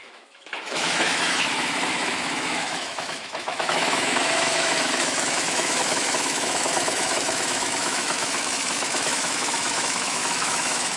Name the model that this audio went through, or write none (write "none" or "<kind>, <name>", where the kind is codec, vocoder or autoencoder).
autoencoder, DAC-VAE